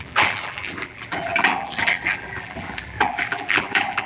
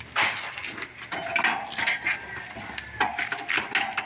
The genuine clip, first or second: second